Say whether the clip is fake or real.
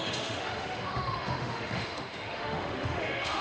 fake